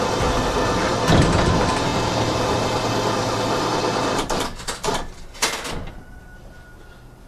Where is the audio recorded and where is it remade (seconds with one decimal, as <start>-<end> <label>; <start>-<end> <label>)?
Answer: 0.0-7.3 recorded